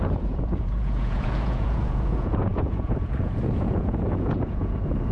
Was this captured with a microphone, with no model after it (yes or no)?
no